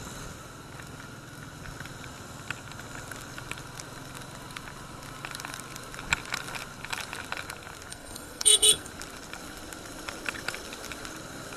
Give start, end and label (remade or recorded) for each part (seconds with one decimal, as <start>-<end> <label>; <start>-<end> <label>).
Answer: 0.0-7.9 recorded; 7.9-8.9 remade; 8.9-11.6 recorded

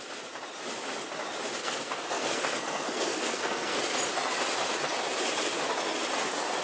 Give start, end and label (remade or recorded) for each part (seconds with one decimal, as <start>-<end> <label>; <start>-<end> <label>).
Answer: 0.0-1.6 recorded; 1.6-3.8 remade; 3.8-6.6 recorded

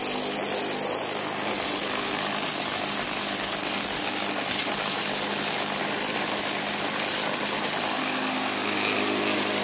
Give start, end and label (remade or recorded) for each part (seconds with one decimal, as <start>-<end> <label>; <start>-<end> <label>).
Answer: 0.0-9.6 recorded

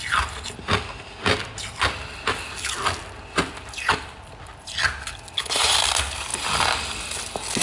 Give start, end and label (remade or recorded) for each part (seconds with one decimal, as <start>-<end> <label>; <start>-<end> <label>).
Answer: 0.0-7.6 recorded

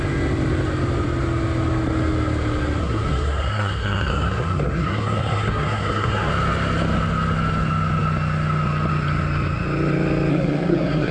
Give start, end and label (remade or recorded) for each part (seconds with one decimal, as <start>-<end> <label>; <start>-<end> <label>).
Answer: 0.0-2.8 recorded; 2.8-6.3 remade; 6.3-10.3 recorded; 10.3-11.1 remade

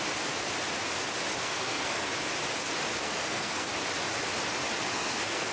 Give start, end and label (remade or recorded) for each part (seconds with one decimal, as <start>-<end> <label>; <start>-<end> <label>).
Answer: 0.0-1.4 recorded; 1.4-2.1 remade; 2.1-2.9 recorded; 2.9-3.7 remade; 3.7-4.9 recorded; 4.9-5.5 remade

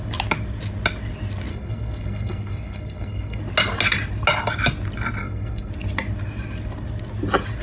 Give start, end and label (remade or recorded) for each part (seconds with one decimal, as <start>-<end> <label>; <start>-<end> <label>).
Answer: 0.0-1.5 recorded; 1.5-3.4 remade; 3.4-5.2 recorded; 5.2-5.7 remade; 5.7-7.6 recorded